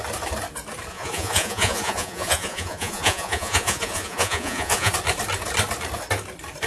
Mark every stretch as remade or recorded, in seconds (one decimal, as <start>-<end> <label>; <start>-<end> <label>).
0.0-0.9 recorded; 0.9-4.9 remade; 4.9-6.7 recorded